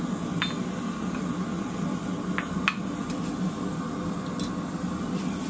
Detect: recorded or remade recorded